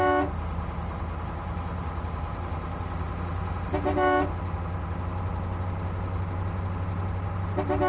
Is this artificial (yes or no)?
no